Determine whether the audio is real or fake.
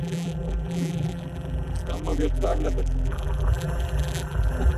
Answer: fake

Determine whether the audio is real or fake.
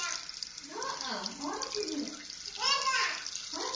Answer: real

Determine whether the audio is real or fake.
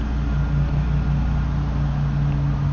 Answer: real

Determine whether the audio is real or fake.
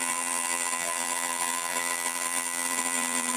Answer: fake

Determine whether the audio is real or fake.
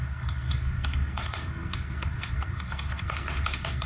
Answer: fake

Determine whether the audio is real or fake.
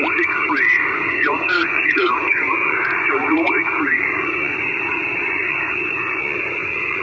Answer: fake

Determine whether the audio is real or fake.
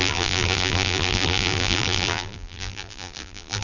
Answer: fake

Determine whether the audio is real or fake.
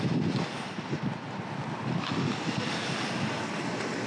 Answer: real